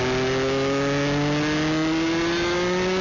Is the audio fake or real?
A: real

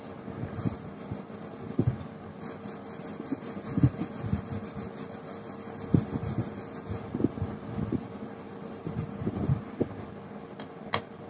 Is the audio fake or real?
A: real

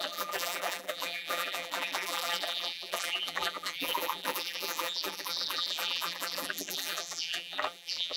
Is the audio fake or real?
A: fake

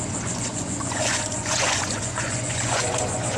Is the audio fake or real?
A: fake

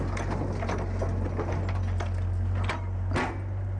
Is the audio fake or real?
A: real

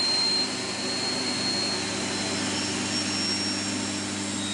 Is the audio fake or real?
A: real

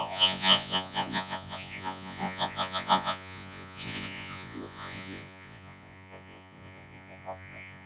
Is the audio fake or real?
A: fake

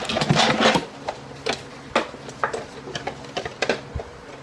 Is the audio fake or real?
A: real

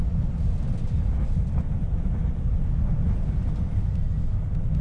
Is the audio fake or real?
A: real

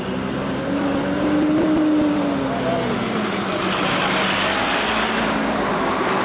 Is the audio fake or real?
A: real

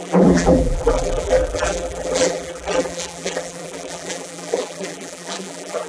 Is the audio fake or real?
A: fake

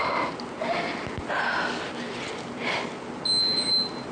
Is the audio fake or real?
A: real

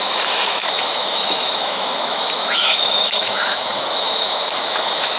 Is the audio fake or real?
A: fake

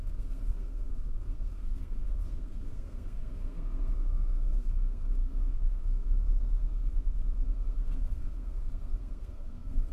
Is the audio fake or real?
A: fake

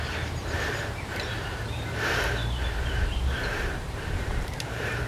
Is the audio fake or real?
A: fake